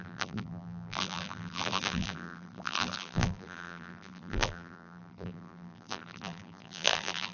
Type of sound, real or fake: fake